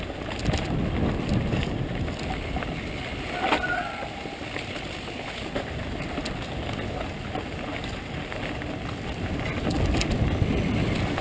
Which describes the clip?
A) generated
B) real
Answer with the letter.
B